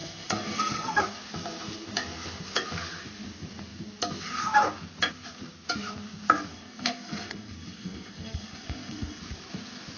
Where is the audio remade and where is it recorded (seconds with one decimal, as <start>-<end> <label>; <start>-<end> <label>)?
0.0-1.0 remade; 1.0-6.5 recorded; 6.5-9.2 remade; 9.2-10.0 recorded